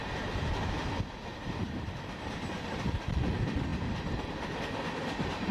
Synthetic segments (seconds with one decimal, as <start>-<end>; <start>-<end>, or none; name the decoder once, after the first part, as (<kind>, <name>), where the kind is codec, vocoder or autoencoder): 1.3-3.0 (vocoder, BigVGAN v2)